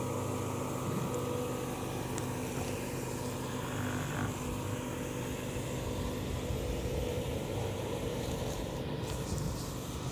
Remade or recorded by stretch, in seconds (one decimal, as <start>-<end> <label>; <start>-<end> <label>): 0.0-7.1 recorded; 7.1-8.6 remade; 8.6-10.1 recorded

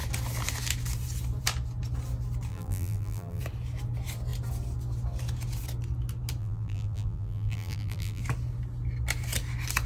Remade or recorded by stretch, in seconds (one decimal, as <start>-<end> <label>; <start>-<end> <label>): 0.0-2.5 recorded; 2.5-3.4 remade; 3.4-6.4 recorded; 6.4-8.2 remade; 8.2-9.9 recorded

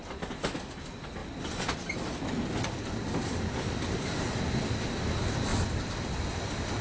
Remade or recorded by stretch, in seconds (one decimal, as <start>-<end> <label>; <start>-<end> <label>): 0.0-5.5 recorded; 5.5-6.8 remade

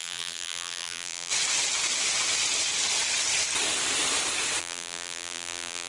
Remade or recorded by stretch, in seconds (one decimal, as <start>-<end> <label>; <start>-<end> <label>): 0.0-1.3 remade; 1.3-4.6 recorded; 4.6-5.9 remade